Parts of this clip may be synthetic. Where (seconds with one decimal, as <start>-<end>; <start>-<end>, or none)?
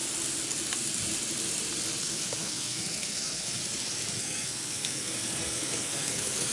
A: 2.0-3.6; 4.2-6.5